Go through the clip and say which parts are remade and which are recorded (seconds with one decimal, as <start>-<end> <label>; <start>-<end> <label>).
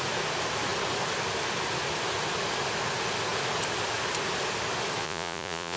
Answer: 0.0-5.0 recorded; 5.0-5.8 remade